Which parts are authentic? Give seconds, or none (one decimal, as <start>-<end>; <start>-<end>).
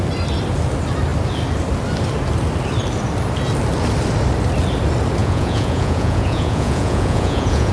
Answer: 0.0-5.2